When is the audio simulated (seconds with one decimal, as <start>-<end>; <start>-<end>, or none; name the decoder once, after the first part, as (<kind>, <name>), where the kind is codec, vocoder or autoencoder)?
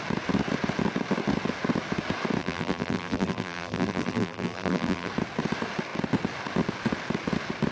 2.4-5.1 (vocoder, BigVGAN v2)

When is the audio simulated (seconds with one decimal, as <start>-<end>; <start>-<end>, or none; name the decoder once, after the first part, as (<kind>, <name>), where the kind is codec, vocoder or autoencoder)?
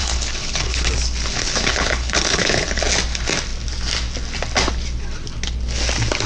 0.0-0.9 (codec, HILCodec); 1.3-2.8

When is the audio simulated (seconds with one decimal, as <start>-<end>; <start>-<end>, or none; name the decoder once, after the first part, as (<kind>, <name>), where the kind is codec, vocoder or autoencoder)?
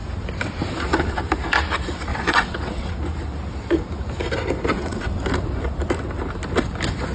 2.1-2.9 (vocoder, WaveNeXt); 4.7-5.2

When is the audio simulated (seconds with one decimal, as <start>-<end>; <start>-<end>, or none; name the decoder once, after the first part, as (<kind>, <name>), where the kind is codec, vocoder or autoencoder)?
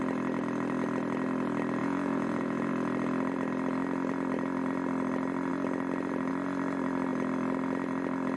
1.8-2.7 (vocoder, Vocos)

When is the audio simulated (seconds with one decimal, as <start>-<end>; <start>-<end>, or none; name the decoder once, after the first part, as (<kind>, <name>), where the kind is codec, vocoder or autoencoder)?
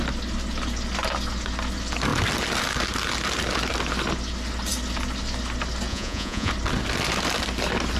5.9-6.5 (vocoder, Vocos)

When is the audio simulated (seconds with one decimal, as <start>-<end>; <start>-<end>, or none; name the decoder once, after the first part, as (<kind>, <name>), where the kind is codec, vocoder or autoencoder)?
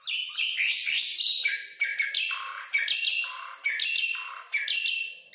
none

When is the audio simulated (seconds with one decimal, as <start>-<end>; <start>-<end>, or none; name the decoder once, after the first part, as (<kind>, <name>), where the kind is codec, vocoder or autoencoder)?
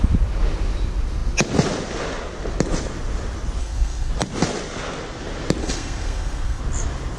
3.6-4.1 (codec, SNAC); 5.6-6.6